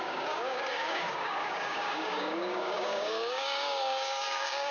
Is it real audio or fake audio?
fake